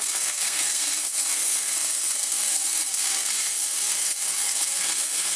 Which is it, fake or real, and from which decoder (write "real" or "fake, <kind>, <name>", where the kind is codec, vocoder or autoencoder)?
fake, codec, SNAC